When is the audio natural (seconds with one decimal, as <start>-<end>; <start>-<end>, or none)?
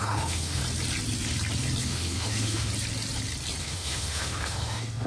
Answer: 0.6-1.8; 2.7-3.6